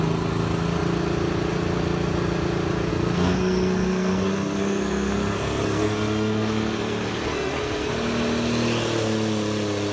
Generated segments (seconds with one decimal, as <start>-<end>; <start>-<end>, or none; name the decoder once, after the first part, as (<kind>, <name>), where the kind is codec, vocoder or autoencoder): 2.9-7.9 (codec, SNAC)